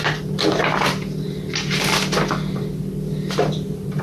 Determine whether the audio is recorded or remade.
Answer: recorded